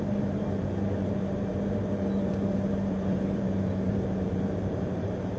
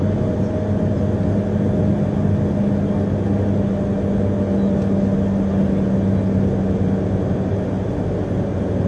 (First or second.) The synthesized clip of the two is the first